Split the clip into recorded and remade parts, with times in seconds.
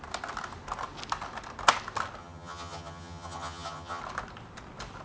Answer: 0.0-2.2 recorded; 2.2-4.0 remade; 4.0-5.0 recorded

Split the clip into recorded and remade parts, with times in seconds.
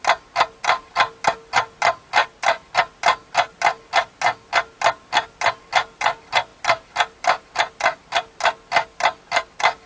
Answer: 0.0-9.9 recorded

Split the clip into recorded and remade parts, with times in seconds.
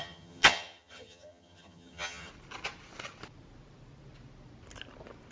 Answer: 0.0-2.3 remade; 2.3-5.3 recorded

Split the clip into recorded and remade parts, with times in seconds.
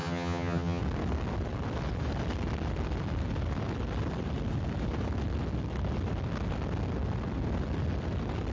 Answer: 0.0-0.8 remade; 0.8-8.5 recorded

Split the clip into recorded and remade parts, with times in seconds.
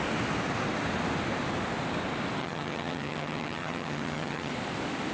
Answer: 0.0-2.4 recorded; 2.4-4.5 remade; 4.5-5.1 recorded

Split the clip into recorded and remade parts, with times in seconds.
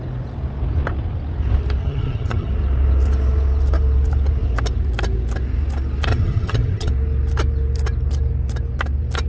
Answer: 0.0-1.8 recorded; 1.8-2.5 remade; 2.5-6.1 recorded; 6.1-6.9 remade; 6.9-9.3 recorded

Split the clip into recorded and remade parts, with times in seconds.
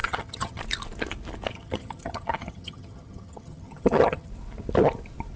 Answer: 0.0-0.6 remade; 0.6-1.5 recorded; 1.5-4.3 remade; 4.3-5.4 recorded